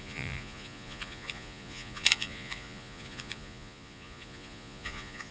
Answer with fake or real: fake